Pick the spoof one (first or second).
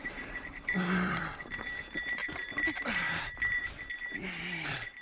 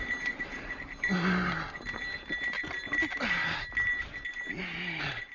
first